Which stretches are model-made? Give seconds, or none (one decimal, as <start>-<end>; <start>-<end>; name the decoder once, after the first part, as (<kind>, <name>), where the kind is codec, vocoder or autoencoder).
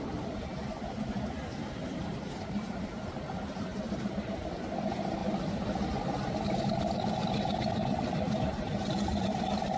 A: 0.0-0.5 (vocoder, BigVGAN v2); 2.0-5.2; 6.6-9.8